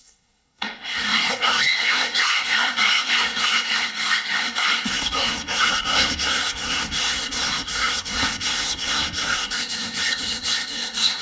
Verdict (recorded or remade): remade